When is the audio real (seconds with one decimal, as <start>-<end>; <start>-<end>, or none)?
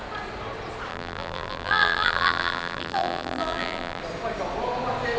0.0-0.9; 4.0-5.2